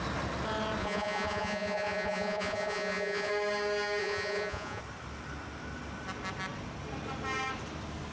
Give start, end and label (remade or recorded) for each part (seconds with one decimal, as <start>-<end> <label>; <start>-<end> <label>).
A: 0.0-0.8 recorded; 0.8-3.3 remade; 3.3-4.0 recorded; 4.0-4.8 remade; 4.8-8.1 recorded